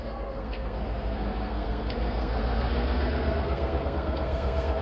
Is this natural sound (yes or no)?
no